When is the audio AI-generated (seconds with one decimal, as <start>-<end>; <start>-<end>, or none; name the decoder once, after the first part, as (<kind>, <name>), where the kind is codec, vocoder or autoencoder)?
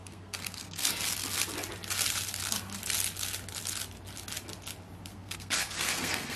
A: 0.0-0.9 (codec, SNAC); 5.1-6.4